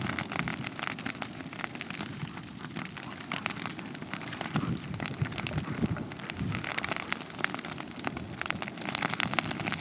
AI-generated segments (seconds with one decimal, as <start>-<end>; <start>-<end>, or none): none